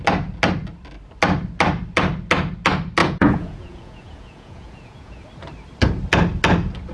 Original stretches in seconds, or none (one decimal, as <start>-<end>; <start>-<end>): 0.0-3.0; 5.2-6.9